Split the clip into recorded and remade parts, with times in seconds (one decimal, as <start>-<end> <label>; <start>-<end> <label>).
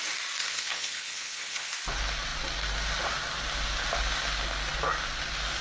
0.0-0.4 recorded; 0.4-1.7 remade; 1.7-5.6 recorded